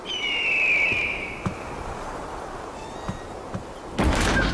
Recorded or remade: recorded